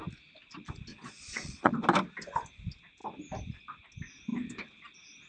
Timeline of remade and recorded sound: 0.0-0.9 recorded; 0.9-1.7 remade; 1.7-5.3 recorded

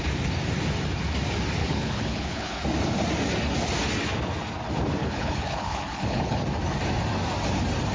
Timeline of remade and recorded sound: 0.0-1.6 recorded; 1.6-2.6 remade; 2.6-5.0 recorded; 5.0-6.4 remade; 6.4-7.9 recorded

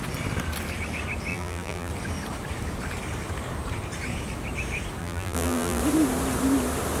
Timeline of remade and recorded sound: 0.0-1.3 recorded; 1.3-1.9 remade; 1.9-5.0 recorded; 5.0-5.8 remade; 5.8-7.0 recorded

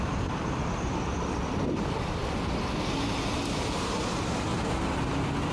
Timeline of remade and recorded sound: 0.0-2.2 remade; 2.2-3.1 recorded; 3.1-4.5 remade; 4.5-5.5 recorded

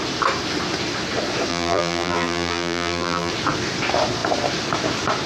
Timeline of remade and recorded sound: 0.0-1.5 recorded; 1.5-3.3 remade; 3.3-5.3 recorded

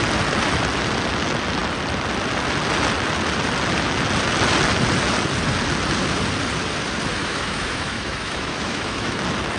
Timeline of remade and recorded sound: 0.0-7.2 recorded; 7.2-9.2 remade; 9.2-9.6 recorded

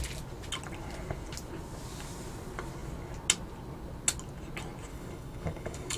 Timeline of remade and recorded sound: 0.0-4.9 recorded; 4.9-6.0 remade